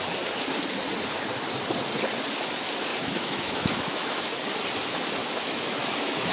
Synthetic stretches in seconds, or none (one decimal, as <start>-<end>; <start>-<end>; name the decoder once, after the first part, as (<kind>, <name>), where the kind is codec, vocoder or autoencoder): 2.9-4.4 (autoencoder, DAC-VAE); 5.2-6.3